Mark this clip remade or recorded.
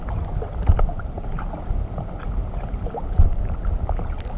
recorded